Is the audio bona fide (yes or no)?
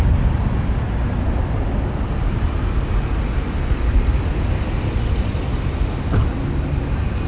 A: yes